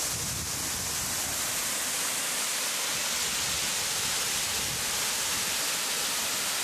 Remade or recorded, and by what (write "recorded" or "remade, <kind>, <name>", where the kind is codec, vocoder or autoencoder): recorded